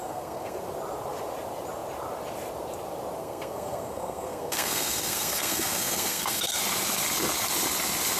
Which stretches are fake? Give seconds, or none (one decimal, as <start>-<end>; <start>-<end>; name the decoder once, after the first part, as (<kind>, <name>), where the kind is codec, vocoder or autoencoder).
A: 0.0-0.6 (codec, SNAC); 3.2-6.6